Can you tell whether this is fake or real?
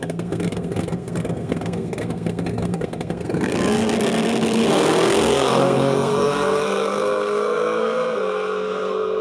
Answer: fake